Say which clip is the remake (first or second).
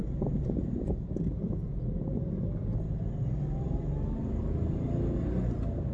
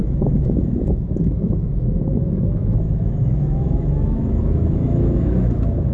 second